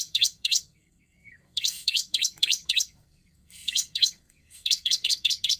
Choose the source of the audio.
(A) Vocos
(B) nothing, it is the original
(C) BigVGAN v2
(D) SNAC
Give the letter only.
D